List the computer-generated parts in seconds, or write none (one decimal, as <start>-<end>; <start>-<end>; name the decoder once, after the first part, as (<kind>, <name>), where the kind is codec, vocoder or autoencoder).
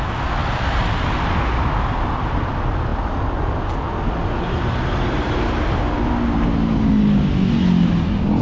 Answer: none